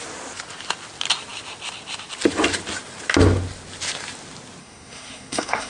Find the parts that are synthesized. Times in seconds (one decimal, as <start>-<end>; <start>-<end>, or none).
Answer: 4.6-5.7